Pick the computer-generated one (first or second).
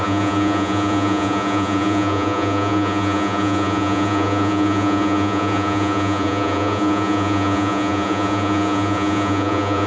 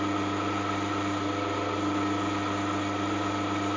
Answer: first